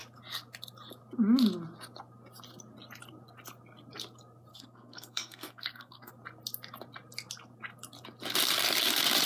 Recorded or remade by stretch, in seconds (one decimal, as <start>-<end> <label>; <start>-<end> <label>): 0.0-4.5 recorded; 4.5-6.1 remade; 6.1-9.3 recorded